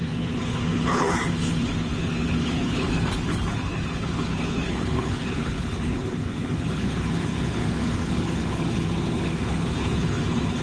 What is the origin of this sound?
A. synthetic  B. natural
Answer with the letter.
A